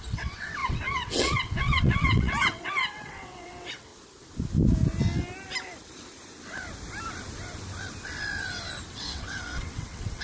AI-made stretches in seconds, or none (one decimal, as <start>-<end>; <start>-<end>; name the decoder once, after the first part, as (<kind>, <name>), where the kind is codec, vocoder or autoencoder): 0.0-3.9 (vocoder, WaveNeXt); 8.9-10.2